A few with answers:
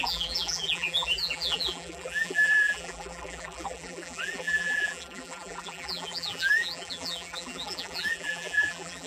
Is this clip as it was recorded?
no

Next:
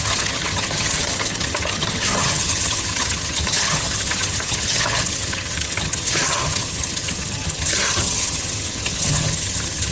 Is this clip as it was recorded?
no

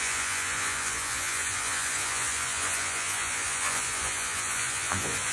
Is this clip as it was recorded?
no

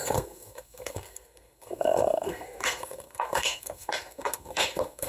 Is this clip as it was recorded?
no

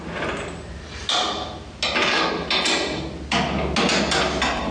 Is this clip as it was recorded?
yes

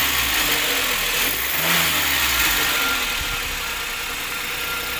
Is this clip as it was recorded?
yes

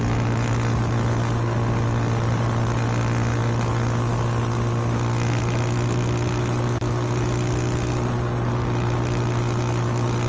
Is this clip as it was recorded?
yes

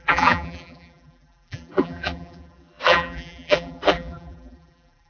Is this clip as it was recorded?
no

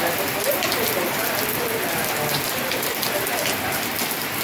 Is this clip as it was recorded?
yes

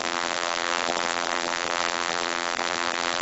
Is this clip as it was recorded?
no